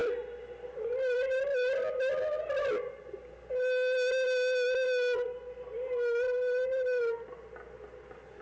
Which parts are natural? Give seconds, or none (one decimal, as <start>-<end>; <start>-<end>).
0.0-8.4